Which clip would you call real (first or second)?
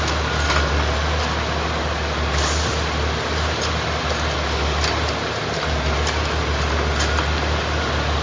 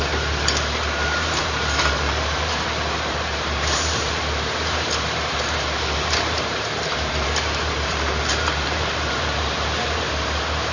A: first